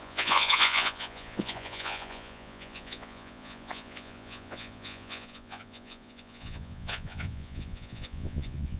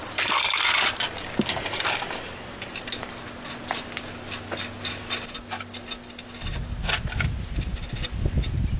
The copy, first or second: first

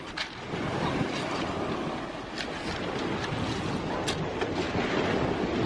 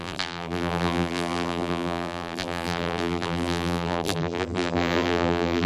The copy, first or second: second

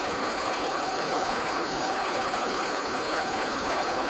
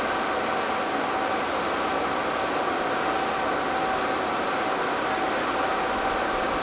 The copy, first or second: first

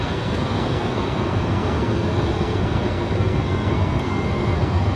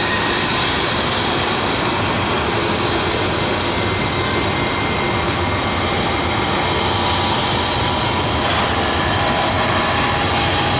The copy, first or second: first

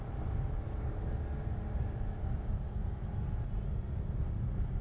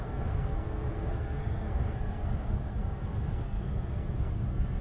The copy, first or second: second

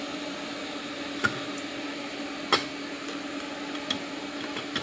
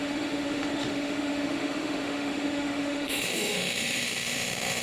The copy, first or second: second